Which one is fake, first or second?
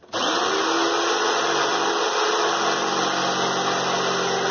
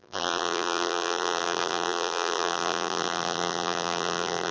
second